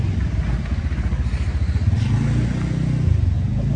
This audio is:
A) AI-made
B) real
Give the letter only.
B